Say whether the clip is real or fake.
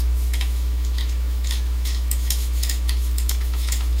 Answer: fake